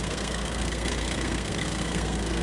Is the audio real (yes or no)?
no